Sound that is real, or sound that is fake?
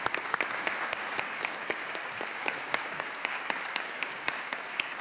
fake